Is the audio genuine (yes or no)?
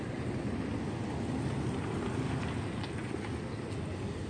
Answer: yes